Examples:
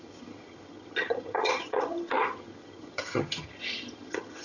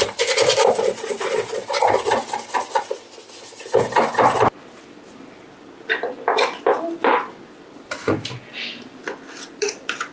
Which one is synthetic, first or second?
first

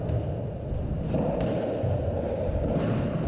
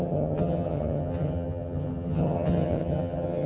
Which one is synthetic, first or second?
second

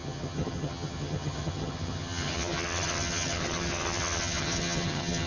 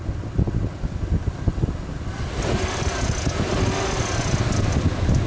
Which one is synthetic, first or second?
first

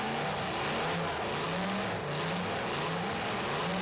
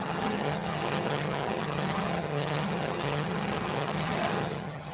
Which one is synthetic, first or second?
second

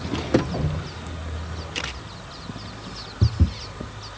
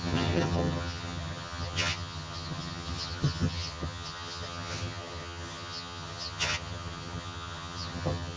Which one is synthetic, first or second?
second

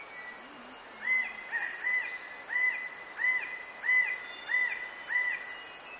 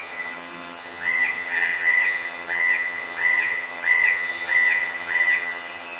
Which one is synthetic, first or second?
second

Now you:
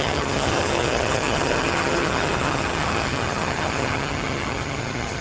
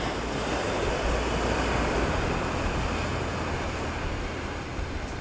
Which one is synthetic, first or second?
first